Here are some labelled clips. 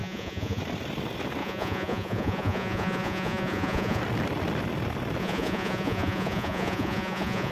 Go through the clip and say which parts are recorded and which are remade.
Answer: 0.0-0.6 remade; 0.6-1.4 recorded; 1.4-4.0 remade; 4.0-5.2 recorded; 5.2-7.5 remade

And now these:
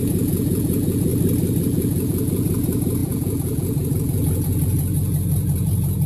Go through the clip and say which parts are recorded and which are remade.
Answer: 0.0-1.1 remade; 1.1-1.6 recorded; 1.6-6.1 remade

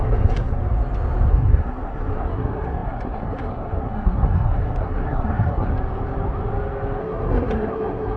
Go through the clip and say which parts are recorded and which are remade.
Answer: 0.0-0.6 remade; 0.6-1.3 recorded; 1.3-5.7 remade; 5.7-7.0 recorded; 7.0-8.2 remade

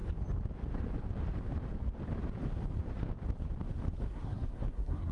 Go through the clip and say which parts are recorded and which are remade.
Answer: 0.0-4.1 recorded; 4.1-5.1 remade